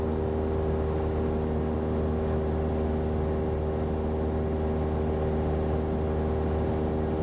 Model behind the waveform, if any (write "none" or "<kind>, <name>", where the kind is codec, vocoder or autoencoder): none